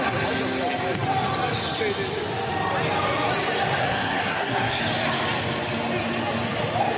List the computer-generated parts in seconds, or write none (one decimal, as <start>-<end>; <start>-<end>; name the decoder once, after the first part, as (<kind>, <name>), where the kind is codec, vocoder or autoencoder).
3.8-4.8 (codec, SNAC)